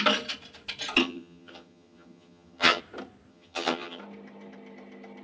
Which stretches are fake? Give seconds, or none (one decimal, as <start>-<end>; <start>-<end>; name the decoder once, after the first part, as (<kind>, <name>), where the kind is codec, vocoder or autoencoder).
1.0-2.8 (vocoder, HiFi-GAN); 3.3-4.0